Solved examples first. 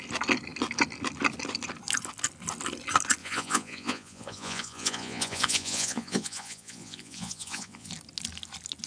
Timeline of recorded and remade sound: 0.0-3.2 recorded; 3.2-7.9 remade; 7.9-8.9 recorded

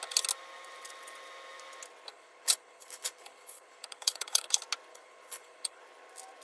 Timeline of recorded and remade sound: 0.0-2.1 recorded; 2.1-4.5 remade; 4.5-4.9 recorded; 4.9-5.8 remade; 5.8-6.4 recorded